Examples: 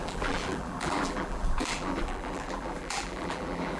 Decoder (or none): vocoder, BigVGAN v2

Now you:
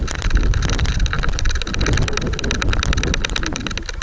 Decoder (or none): none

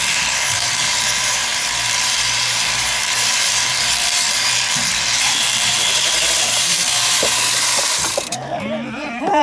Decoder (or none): vocoder, BigVGAN v2